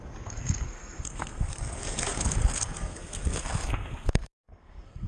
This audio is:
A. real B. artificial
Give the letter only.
B